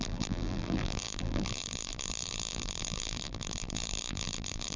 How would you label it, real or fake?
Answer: fake